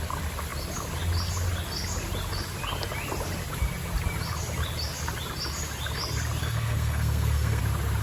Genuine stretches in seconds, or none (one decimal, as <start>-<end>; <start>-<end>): 0.0-6.4; 7.6-8.0